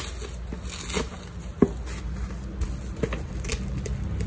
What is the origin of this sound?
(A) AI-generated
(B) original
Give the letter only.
B